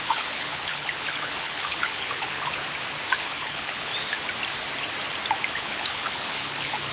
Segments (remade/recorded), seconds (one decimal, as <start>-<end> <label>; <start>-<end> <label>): 0.0-2.6 remade; 2.6-3.2 recorded; 3.2-3.9 remade; 3.9-5.5 recorded; 5.5-6.9 remade